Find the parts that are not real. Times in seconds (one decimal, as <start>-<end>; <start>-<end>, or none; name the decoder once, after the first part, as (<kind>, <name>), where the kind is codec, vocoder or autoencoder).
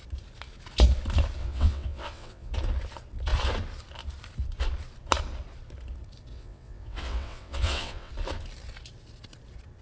1.4-2.5 (vocoder, WaveNeXt); 6.3-8.1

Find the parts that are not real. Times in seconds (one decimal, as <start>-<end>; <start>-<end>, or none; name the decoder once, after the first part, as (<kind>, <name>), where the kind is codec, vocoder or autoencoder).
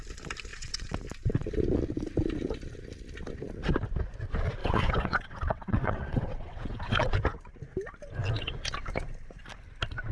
0.5-1.0 (vocoder, WaveNeXt); 4.6-7.1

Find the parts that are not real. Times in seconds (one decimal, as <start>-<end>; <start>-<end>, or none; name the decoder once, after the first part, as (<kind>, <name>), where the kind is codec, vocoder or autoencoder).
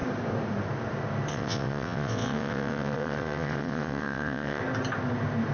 1.3-4.6 (vocoder, WaveNeXt)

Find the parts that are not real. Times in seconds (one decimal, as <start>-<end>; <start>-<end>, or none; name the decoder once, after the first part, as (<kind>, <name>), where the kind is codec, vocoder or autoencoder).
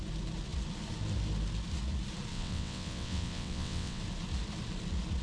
2.3-4.0 (vocoder, WaveNeXt)